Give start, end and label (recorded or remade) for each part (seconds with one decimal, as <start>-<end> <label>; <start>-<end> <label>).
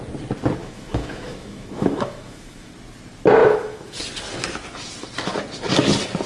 0.0-0.6 recorded; 0.6-2.7 remade; 2.7-3.4 recorded; 3.4-4.0 remade; 4.0-6.3 recorded